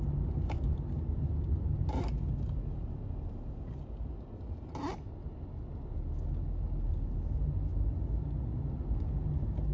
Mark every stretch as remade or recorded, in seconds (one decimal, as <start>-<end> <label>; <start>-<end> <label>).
0.0-9.7 recorded